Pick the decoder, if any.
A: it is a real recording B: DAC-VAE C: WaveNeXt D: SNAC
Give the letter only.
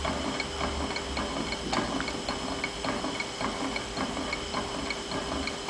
A